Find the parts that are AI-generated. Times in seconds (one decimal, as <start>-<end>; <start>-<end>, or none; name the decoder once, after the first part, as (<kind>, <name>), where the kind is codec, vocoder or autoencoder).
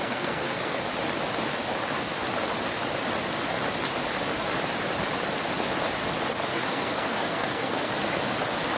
0.0-0.8 (codec, SNAC); 6.5-7.9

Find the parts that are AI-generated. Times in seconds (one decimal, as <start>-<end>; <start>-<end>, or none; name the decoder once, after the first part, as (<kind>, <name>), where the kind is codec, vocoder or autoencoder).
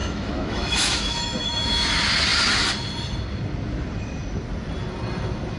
0.0-1.9 (autoencoder, DAC-VAE)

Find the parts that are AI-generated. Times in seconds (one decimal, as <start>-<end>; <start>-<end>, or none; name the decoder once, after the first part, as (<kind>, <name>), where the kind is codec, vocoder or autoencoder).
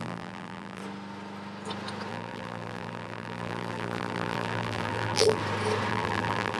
0.0-0.8 (vocoder, BigVGAN v2); 2.1-5.4; 5.9-6.6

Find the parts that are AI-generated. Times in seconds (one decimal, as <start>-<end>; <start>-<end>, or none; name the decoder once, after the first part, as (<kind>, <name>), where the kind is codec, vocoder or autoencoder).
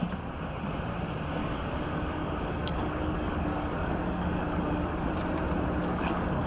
1.4-5.1 (codec, DAC); 5.8-6.5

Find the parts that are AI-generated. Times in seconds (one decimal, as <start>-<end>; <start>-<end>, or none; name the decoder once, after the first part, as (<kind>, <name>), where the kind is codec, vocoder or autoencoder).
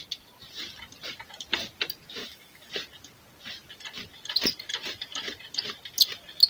2.2-2.7 (autoencoder, DAC-VAE)